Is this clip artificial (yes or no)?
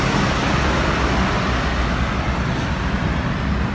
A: no